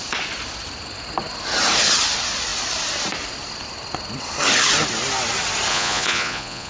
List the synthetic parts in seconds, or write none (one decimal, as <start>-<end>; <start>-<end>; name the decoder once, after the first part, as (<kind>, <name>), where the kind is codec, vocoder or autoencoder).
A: 5.7-6.7 (vocoder, Vocos)